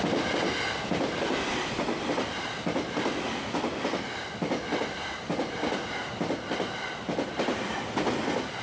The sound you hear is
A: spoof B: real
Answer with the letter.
B